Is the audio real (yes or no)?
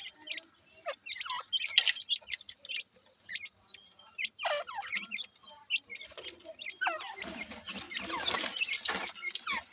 yes